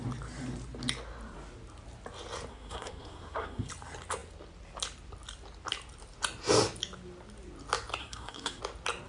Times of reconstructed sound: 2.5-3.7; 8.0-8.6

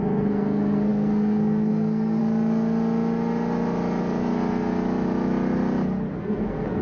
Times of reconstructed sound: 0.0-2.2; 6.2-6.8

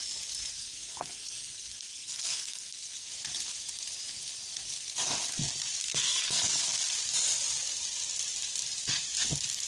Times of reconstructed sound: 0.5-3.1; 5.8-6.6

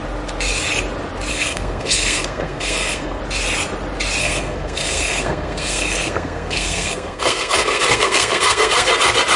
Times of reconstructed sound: 1.3-3.2; 4.2-8.9

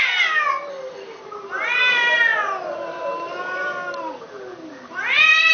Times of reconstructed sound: 0.7-1.2

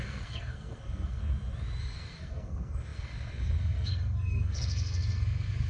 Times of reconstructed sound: 0.0-1.2; 1.8-5.7

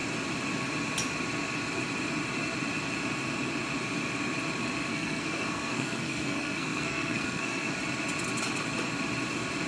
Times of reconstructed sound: 4.9-7.7

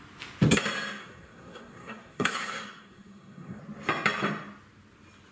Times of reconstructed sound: 1.0-3.6